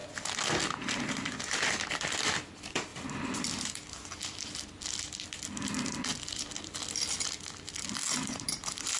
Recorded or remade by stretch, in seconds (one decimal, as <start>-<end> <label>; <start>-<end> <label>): 0.0-9.0 recorded